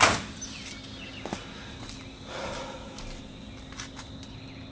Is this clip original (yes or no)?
yes